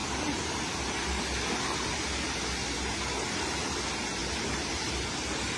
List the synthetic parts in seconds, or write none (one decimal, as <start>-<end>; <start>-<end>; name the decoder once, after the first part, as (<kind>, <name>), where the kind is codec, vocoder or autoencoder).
0.0-1.2 (vocoder, BigVGAN v2); 4.2-5.6